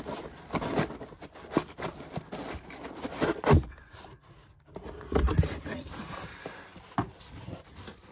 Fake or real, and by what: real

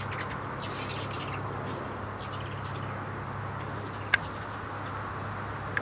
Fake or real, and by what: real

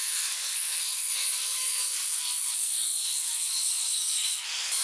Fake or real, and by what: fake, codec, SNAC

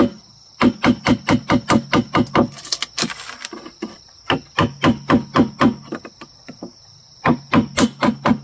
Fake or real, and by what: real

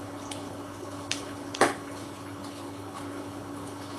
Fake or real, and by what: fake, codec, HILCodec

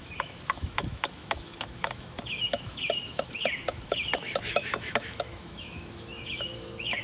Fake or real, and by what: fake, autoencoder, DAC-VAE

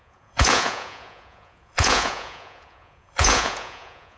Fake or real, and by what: fake, vocoder, Vocos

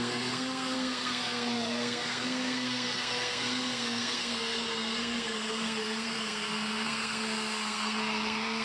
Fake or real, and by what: fake, codec, SNAC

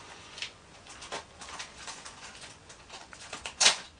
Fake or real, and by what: fake, vocoder, Vocos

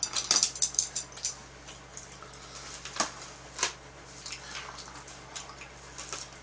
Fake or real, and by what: real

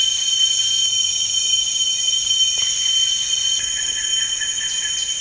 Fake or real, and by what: fake, vocoder, BigVGAN v2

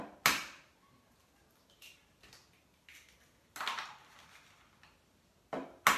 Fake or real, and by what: real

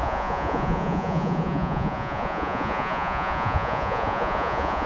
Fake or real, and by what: fake, vocoder, Vocos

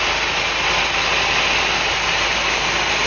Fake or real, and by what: real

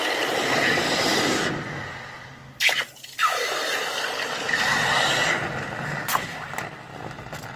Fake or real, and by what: real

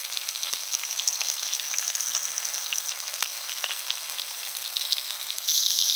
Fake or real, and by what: fake, codec, SNAC